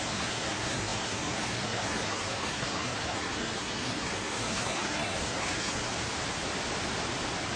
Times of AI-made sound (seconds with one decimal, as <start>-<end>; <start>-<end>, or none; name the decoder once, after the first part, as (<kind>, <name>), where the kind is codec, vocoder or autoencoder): 0.0-5.9 (codec, SNAC)